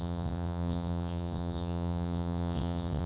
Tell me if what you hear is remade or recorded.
remade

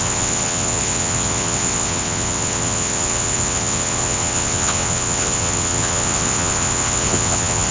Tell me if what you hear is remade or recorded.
remade